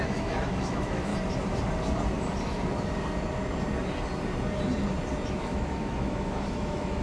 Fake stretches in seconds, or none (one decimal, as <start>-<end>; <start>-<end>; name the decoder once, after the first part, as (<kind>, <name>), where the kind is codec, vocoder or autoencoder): 0.0-1.1 (autoencoder, DAC-VAE); 5.3-7.0